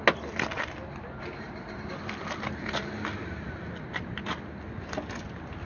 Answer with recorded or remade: recorded